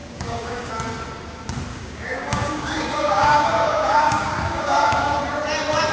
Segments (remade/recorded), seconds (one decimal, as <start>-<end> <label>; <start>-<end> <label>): 0.0-0.7 remade; 0.7-1.7 recorded; 1.7-5.2 remade; 5.2-5.9 recorded